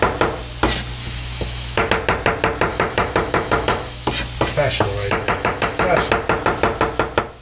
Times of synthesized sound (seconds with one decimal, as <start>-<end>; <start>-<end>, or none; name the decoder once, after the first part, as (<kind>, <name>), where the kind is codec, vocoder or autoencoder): 1.0-1.9 (autoencoder, DAC-VAE); 2.7-4.1; 5.0-6.1